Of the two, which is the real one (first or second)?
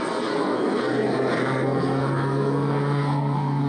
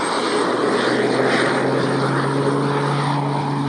second